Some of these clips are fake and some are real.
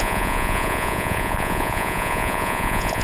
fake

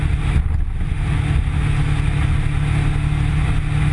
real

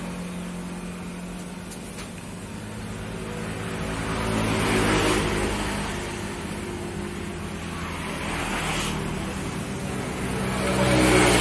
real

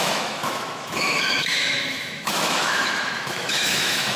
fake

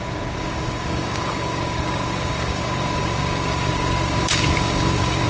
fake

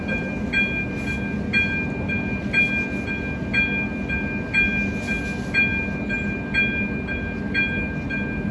real